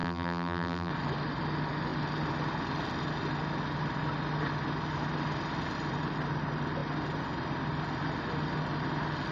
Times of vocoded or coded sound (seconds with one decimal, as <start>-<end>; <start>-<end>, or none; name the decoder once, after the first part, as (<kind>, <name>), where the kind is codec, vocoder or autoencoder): 0.0-0.9 (vocoder, BigVGAN v2)